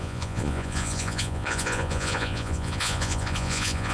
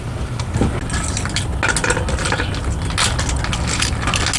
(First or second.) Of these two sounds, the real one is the second